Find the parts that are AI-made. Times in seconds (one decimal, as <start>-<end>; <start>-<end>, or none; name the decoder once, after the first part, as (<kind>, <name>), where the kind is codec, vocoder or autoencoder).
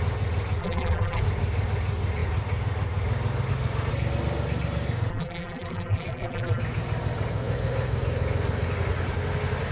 0.6-1.2 (vocoder, BigVGAN v2); 5.1-6.6